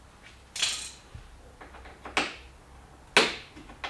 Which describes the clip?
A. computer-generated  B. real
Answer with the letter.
B